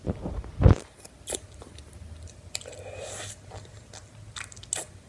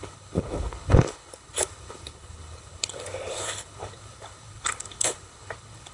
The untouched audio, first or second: first